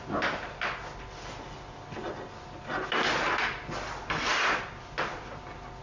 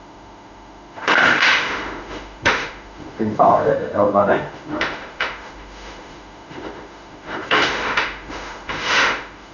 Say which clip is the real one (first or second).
first